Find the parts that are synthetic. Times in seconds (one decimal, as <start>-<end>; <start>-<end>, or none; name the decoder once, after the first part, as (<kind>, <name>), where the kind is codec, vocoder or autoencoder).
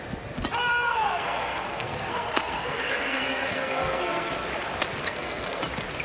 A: 0.7-4.3 (codec, SNAC); 5.0-5.6